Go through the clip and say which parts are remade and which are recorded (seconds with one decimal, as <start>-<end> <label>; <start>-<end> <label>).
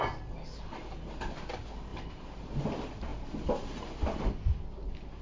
0.0-5.2 recorded